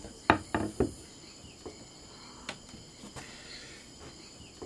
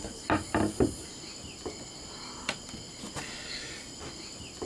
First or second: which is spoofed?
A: second